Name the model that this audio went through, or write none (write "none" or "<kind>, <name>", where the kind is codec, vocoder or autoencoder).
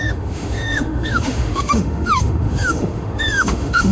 autoencoder, DAC-VAE